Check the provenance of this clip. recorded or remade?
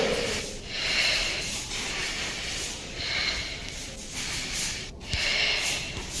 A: recorded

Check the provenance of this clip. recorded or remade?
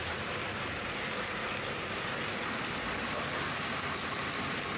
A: recorded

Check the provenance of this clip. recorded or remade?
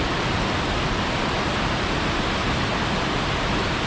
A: recorded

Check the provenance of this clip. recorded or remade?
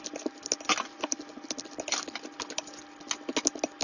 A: recorded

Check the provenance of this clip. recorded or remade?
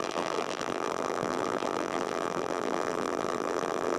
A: remade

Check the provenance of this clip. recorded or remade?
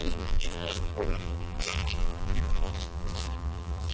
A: remade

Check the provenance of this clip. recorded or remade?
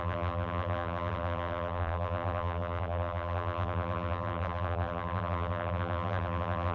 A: remade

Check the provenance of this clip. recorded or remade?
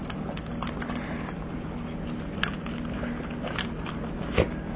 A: recorded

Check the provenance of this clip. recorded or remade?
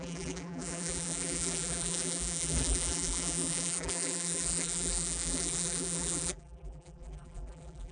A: remade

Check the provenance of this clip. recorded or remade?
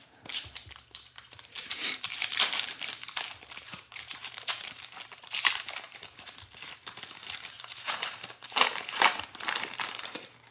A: remade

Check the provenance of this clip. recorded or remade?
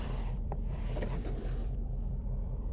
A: remade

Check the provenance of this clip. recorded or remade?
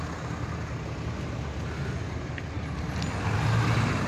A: recorded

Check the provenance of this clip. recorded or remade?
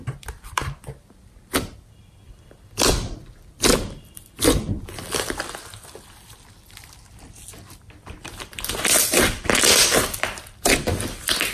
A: remade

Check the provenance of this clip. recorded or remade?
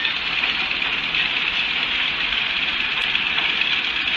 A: remade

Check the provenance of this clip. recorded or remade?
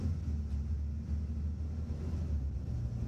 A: recorded